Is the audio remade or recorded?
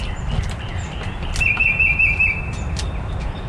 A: recorded